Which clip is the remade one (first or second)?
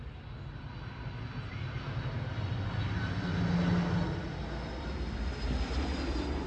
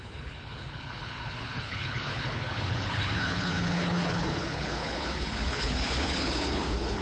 second